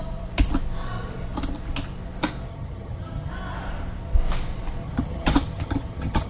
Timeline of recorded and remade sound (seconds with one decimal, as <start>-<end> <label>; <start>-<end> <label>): 0.0-2.5 recorded; 2.5-3.3 remade; 3.3-4.8 recorded; 4.8-6.3 remade